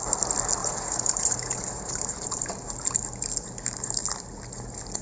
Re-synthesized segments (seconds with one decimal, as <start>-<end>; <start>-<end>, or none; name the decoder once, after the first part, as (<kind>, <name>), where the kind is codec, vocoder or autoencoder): 0.6-2.5 (vocoder, BigVGAN v2)